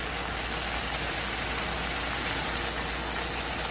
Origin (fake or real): real